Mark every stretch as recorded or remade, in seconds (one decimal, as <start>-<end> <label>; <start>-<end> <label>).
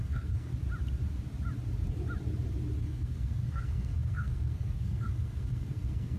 0.0-0.5 remade; 0.5-2.8 recorded; 2.8-6.2 remade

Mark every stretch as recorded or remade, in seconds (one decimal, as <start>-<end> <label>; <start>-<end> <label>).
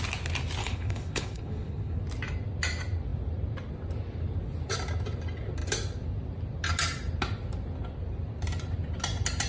0.0-0.6 recorded; 0.6-2.0 remade; 2.0-9.5 recorded